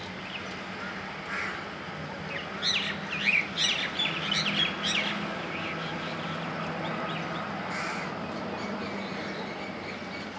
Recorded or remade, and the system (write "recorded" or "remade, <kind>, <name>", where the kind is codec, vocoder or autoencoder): recorded